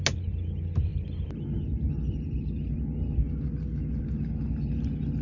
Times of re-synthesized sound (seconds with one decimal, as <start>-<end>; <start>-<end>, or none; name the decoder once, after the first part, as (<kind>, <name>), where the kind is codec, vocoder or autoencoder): none